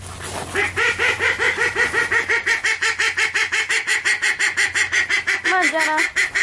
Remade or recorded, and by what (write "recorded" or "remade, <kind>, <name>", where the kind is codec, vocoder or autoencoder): recorded